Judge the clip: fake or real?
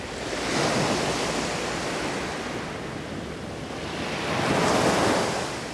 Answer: real